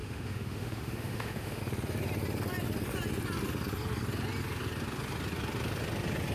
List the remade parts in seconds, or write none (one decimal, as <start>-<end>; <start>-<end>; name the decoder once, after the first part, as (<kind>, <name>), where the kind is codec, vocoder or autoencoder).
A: 0.0-1.6 (autoencoder, DAC-VAE)